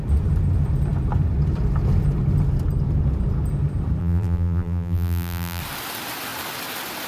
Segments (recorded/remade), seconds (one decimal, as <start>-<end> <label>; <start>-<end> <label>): 0.0-4.0 recorded; 4.0-5.6 remade; 5.6-7.1 recorded